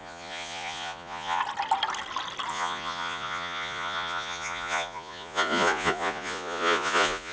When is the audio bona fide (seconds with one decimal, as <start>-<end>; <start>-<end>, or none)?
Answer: 1.4-2.5